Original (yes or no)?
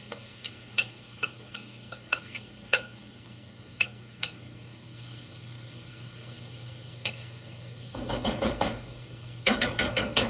no